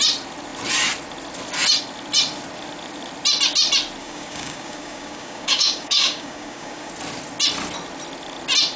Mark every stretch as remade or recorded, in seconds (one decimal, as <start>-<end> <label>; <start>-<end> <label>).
0.0-4.0 recorded; 4.0-6.9 remade; 6.9-8.8 recorded